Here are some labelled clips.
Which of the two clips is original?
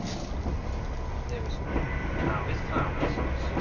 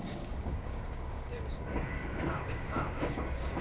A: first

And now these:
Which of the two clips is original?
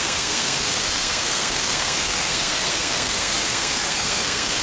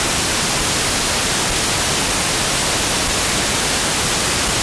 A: second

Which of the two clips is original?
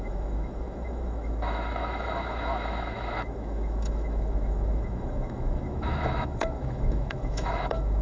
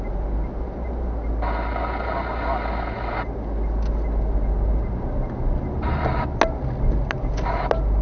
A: second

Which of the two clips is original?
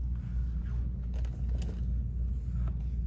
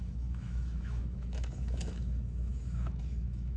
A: first